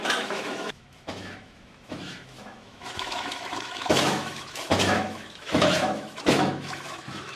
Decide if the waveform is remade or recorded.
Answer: remade